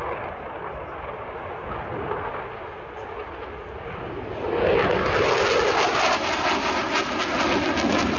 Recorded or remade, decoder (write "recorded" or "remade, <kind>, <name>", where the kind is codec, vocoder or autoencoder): recorded